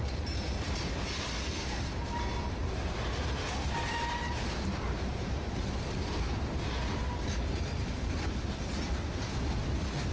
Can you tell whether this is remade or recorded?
recorded